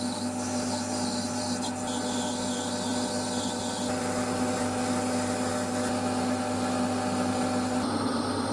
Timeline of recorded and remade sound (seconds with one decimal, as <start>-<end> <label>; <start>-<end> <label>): 0.0-8.5 recorded